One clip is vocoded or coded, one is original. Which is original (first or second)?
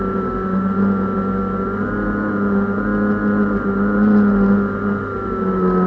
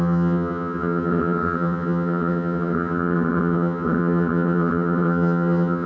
first